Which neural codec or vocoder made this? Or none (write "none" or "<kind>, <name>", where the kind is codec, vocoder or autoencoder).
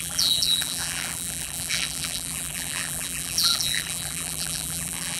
vocoder, BigVGAN v2